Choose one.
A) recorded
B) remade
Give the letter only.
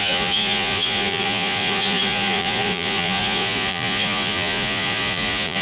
B